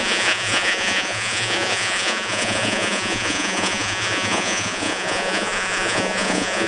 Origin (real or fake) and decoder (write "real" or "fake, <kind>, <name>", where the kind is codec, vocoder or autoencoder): fake, vocoder, Vocos